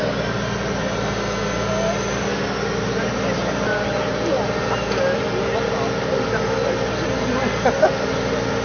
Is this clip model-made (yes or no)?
no